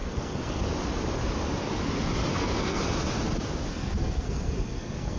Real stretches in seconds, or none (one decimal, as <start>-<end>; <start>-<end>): 0.6-2.3; 2.8-3.7